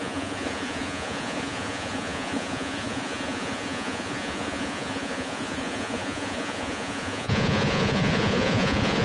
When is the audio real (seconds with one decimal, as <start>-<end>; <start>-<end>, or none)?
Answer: none